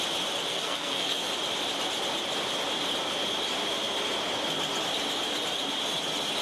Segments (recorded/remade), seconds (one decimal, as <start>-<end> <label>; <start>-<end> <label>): 0.0-0.5 recorded; 0.5-1.3 remade; 1.3-6.4 recorded